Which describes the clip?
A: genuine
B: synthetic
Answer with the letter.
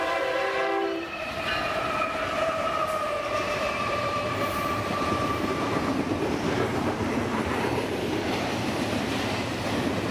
B